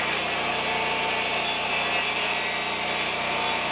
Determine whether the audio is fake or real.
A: real